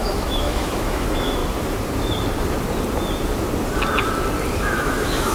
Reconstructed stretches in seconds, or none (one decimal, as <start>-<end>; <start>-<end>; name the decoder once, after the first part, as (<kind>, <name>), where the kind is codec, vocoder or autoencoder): 0.0-1.4 (autoencoder, DAC-VAE); 4.6-5.3